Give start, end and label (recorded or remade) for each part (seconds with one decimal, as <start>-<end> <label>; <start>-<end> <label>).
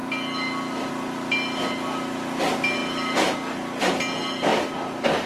0.0-5.3 recorded